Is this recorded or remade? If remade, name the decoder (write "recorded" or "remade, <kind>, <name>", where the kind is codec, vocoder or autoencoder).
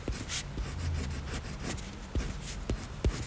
recorded